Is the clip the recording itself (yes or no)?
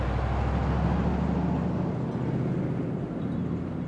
yes